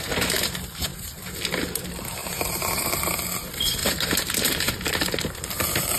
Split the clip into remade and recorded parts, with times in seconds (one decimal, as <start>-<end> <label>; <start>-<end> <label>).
0.0-2.2 recorded; 2.2-2.9 remade; 2.9-3.8 recorded; 3.8-4.7 remade; 4.7-6.0 recorded